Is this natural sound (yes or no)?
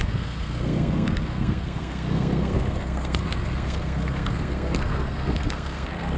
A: no